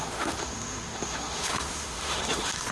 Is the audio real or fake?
fake